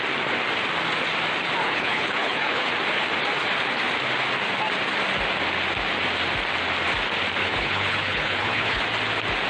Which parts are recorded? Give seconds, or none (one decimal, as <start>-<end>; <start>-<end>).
0.0-1.6; 2.7-7.4; 8.8-9.5